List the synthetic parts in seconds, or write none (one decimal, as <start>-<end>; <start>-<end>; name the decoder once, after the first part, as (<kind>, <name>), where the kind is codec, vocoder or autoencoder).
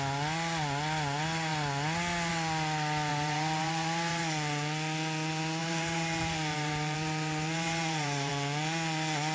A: 3.1-4.2 (vocoder, BigVGAN v2); 5.6-8.3